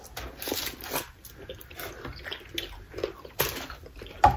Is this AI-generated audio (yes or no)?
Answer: no